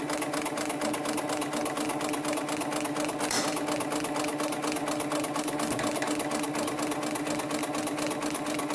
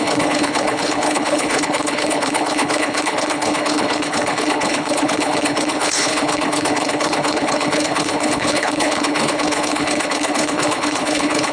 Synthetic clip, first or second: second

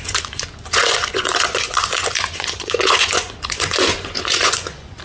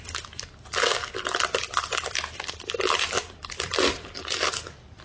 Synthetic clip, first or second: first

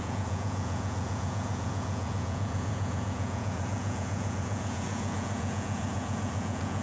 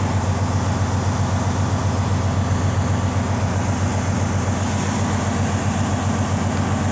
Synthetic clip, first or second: first